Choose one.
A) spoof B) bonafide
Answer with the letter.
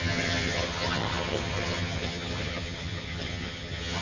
A